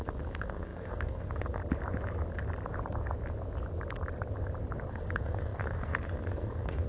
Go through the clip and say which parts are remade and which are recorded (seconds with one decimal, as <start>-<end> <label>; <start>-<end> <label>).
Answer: 0.0-1.6 remade; 1.6-4.9 recorded; 4.9-6.9 remade